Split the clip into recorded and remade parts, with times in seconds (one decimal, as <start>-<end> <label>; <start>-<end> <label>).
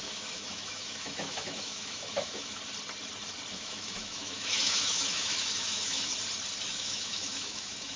0.0-2.6 remade; 2.6-3.5 recorded; 3.5-6.1 remade; 6.1-6.7 recorded; 6.7-8.0 remade